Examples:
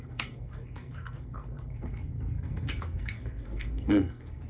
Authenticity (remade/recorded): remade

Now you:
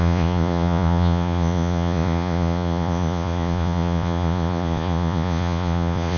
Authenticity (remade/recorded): remade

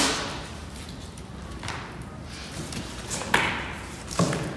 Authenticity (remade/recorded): recorded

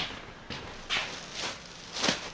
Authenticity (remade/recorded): recorded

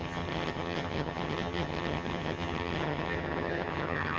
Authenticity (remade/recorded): remade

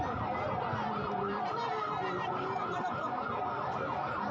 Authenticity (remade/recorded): recorded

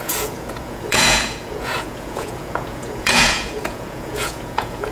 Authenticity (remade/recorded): remade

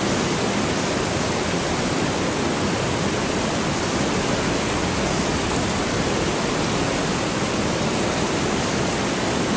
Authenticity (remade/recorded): recorded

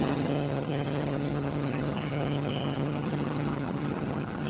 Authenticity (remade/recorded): remade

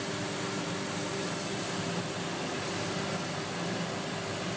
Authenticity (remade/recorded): recorded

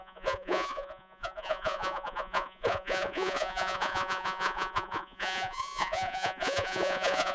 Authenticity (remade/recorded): remade